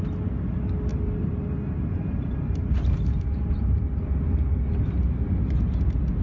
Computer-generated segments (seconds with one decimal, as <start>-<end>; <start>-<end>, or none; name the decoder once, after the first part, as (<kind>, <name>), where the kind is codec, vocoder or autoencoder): 0.9-3.7 (vocoder, BigVGAN v2)